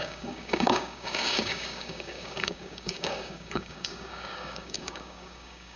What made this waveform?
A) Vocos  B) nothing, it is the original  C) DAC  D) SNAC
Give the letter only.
C